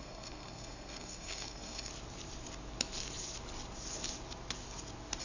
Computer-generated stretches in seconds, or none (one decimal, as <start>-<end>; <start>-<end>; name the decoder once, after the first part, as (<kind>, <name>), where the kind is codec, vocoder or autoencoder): 0.0-1.9 (codec, SNAC)